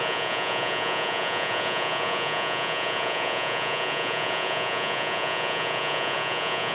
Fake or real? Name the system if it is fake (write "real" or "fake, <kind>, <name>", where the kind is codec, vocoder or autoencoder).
fake, vocoder, Vocos